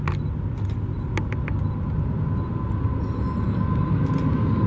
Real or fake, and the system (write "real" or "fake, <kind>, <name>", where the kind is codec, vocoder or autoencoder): real